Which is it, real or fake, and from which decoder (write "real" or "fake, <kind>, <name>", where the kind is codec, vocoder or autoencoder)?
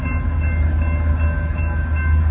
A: real